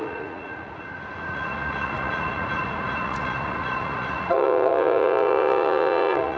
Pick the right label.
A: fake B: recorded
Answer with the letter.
A